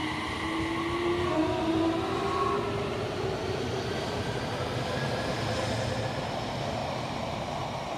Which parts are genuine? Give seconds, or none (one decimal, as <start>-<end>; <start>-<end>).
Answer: 0.0-6.8